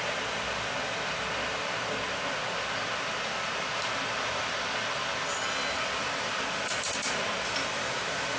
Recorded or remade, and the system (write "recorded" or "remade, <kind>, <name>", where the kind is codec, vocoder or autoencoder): recorded